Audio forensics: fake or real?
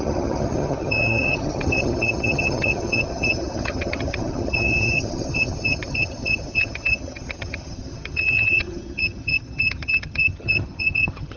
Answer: fake